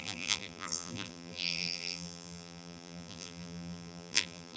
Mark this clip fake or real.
fake